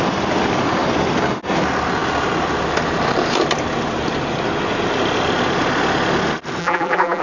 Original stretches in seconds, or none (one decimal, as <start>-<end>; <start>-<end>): 0.0-6.6